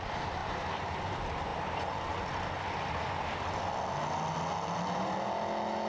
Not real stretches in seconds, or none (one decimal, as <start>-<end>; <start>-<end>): 0.4-1.0

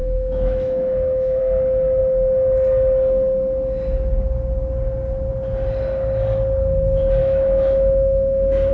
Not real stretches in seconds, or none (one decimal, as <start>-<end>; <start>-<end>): 0.0-1.4; 7.2-8.7